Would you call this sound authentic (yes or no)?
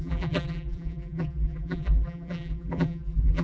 no